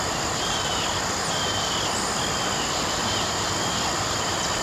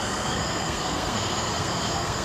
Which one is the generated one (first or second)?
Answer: second